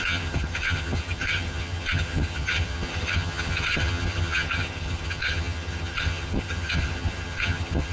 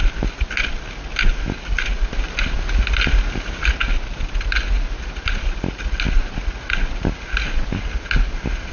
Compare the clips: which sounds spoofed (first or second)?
first